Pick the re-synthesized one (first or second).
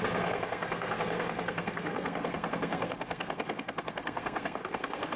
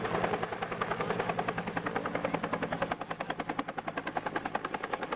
first